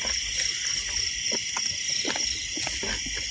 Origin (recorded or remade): recorded